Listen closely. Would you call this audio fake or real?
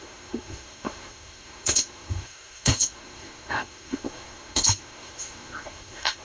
fake